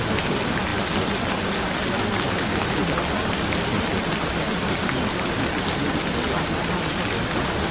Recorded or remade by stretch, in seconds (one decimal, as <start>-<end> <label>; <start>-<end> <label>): 0.0-7.7 recorded